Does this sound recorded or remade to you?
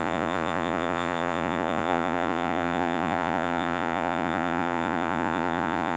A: remade